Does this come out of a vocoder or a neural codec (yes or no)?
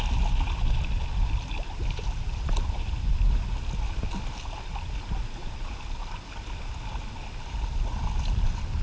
no